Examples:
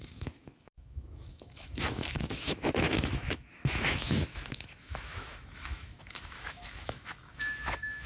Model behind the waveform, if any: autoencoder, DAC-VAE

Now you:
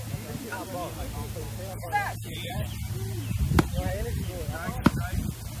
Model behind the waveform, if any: none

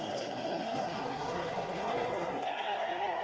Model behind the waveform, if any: codec, SNAC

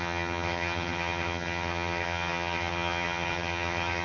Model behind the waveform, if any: vocoder, HiFi-GAN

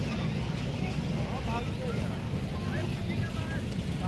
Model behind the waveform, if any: none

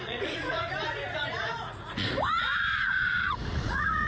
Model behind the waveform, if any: vocoder, Vocos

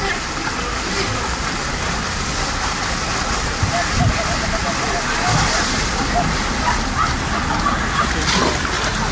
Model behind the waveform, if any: none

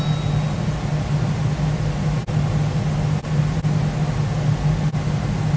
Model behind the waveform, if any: none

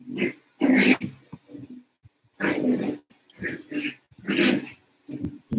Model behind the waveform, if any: none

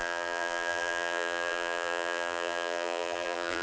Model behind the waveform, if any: vocoder, BigVGAN v2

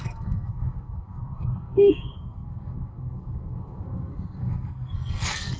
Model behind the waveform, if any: codec, SNAC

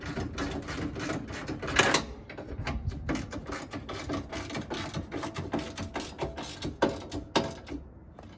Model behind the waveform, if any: none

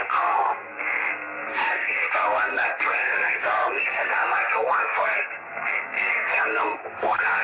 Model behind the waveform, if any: codec, SNAC